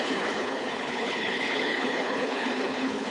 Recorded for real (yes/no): no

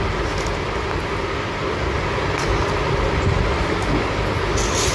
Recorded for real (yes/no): yes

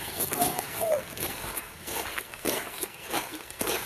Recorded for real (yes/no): no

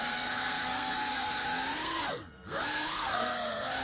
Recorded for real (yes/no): no